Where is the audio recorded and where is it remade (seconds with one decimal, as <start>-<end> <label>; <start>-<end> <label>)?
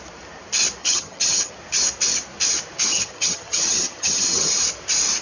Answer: 0.0-0.8 recorded; 0.8-1.5 remade; 1.5-2.9 recorded; 2.9-4.6 remade; 4.6-5.2 recorded